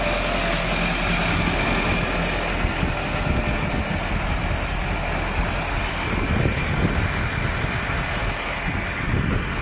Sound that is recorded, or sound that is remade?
recorded